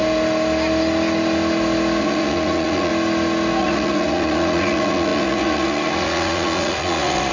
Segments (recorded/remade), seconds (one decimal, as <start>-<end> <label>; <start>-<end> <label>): 0.0-2.0 recorded; 2.0-2.9 remade; 2.9-3.6 recorded; 3.6-7.3 remade